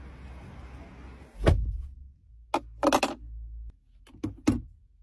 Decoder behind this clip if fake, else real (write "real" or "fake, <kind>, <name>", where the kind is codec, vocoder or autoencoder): real